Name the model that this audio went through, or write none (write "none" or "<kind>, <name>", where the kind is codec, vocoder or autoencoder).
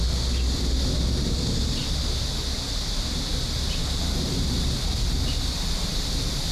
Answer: none